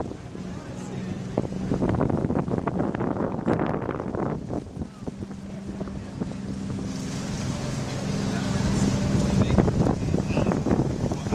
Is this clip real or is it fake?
real